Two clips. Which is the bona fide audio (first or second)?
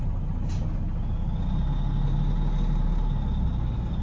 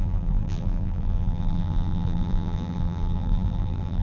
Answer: first